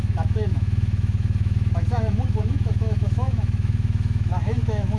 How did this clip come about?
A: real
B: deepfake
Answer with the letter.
B